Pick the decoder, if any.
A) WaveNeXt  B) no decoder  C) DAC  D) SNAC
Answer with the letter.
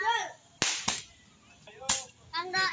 B